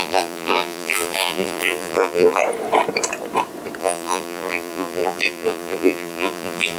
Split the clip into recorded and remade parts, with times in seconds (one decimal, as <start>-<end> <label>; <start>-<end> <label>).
0.0-2.4 remade; 2.4-3.8 recorded; 3.8-6.8 remade